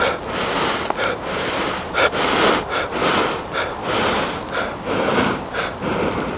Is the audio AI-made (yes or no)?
no